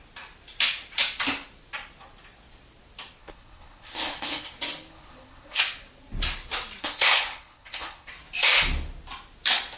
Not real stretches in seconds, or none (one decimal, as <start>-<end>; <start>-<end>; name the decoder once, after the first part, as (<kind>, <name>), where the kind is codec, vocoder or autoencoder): 3.2-4.5 (codec, HILCodec); 4.9-5.6; 6.8-8.1